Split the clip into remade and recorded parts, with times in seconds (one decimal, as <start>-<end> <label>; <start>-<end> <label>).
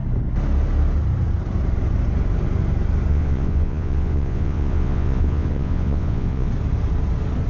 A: 0.0-3.1 recorded; 3.1-6.5 remade; 6.5-7.5 recorded